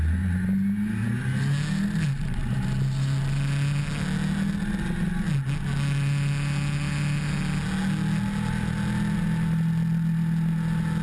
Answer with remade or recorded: recorded